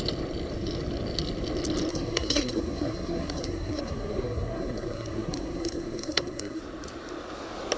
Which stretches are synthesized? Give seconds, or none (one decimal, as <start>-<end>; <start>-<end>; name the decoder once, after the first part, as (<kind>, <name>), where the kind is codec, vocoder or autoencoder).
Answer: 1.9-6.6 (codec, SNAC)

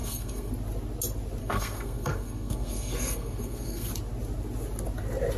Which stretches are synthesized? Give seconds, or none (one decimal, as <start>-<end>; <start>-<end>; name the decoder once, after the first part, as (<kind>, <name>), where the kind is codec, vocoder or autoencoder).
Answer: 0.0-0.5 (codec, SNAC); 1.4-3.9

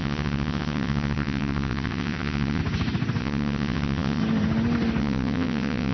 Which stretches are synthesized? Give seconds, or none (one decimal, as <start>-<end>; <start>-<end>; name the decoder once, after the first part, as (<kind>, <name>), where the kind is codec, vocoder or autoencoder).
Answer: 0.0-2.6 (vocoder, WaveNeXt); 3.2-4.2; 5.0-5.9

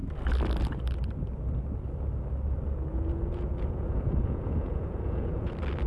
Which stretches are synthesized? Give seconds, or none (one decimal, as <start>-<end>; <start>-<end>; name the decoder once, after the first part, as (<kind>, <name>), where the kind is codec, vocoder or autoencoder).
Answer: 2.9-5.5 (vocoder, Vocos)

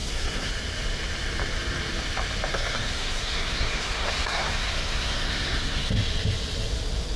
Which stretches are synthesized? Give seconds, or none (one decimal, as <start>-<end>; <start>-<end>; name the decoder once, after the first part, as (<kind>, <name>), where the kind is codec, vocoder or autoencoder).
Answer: 0.0-0.5 (codec, SNAC); 2.5-5.9